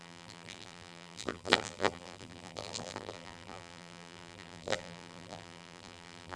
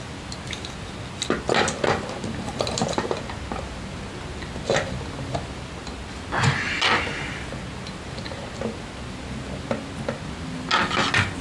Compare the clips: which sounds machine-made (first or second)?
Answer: first